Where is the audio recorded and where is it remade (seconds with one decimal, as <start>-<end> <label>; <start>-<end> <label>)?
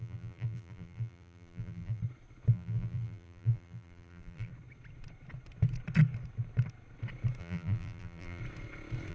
0.0-2.0 remade; 2.0-2.5 recorded; 2.5-4.5 remade; 4.5-7.4 recorded; 7.4-8.4 remade; 8.4-9.1 recorded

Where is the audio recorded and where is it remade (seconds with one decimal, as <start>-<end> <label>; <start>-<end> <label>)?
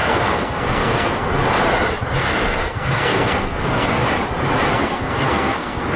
0.0-1.4 remade; 1.4-2.2 recorded; 2.2-4.0 remade; 4.0-4.7 recorded; 4.7-6.0 remade